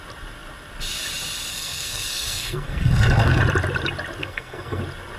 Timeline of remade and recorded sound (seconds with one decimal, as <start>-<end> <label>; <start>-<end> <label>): 0.0-1.5 recorded; 1.5-3.4 remade; 3.4-4.2 recorded; 4.2-4.8 remade; 4.8-5.2 recorded